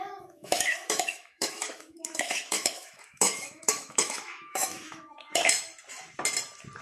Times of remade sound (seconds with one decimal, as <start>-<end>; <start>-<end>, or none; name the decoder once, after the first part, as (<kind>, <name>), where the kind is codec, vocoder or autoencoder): 0.0-5.7 (autoencoder, DAC-VAE)